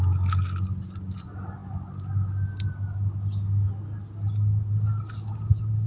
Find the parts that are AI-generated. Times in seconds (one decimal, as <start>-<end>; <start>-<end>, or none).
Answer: none